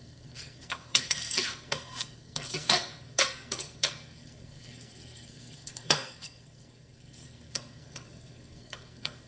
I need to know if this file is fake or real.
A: fake